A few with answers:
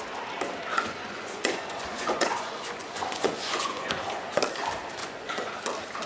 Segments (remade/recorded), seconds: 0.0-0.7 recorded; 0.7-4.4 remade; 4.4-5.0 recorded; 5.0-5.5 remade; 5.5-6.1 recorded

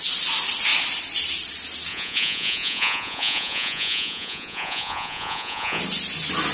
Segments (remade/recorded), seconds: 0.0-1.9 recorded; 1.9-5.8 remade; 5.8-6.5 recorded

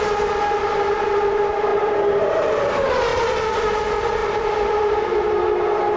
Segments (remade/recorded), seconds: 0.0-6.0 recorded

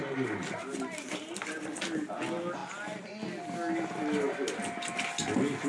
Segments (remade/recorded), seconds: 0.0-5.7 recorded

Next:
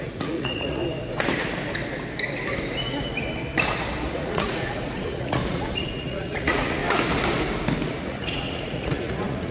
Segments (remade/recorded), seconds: 0.0-0.8 remade; 0.8-4.1 recorded; 4.1-6.8 remade; 6.8-7.9 recorded; 7.9-9.5 remade

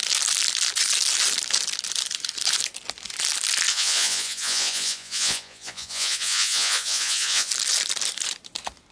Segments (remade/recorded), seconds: 0.0-3.7 recorded; 3.7-7.5 remade; 7.5-8.9 recorded

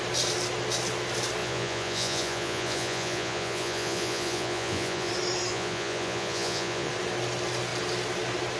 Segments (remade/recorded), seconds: 0.0-1.4 recorded; 1.4-5.1 remade; 5.1-5.5 recorded; 5.5-6.9 remade; 6.9-8.6 recorded